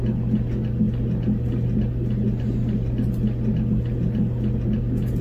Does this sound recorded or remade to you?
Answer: recorded